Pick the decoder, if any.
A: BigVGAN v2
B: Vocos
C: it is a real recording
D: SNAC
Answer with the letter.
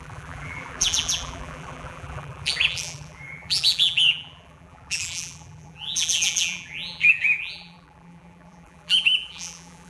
A